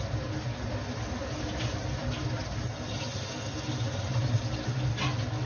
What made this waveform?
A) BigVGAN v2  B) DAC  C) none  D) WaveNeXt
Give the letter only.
C